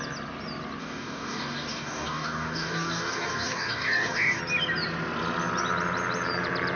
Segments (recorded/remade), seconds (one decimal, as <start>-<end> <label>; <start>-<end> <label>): 0.0-0.8 recorded; 0.8-4.4 remade; 4.4-6.8 recorded